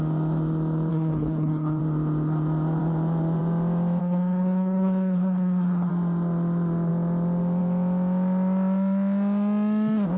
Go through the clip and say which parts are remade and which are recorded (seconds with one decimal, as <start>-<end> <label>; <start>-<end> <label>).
0.0-0.9 recorded; 0.9-1.8 remade; 1.8-4.0 recorded; 4.0-5.9 remade; 5.9-10.2 recorded